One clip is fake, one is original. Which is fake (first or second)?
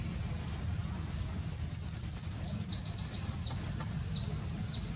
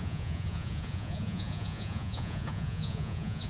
second